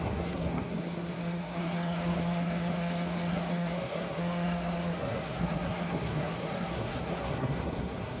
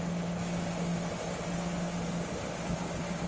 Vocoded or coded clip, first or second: first